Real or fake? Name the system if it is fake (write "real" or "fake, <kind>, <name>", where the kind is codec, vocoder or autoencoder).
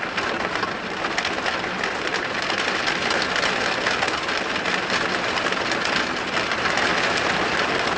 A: real